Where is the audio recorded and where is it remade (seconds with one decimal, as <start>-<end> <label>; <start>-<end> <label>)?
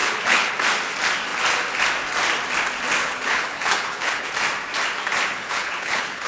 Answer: 0.0-0.5 remade; 0.5-3.0 recorded; 3.0-4.3 remade; 4.3-5.3 recorded; 5.3-6.3 remade